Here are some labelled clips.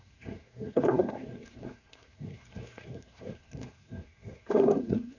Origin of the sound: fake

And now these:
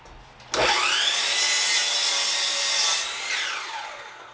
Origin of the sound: real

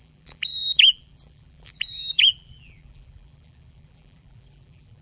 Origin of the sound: fake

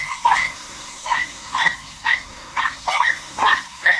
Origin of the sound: fake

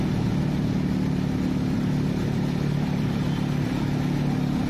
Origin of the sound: real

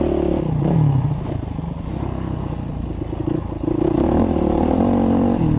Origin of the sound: real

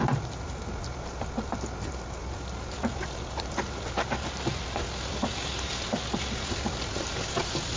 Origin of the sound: fake